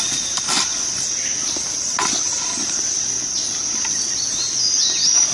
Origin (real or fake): real